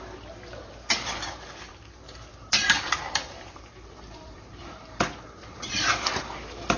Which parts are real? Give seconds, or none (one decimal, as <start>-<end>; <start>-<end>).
0.0-1.7; 5.8-6.8